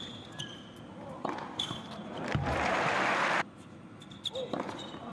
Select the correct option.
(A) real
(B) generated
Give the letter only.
B